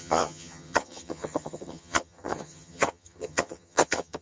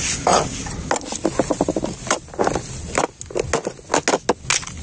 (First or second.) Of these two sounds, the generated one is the first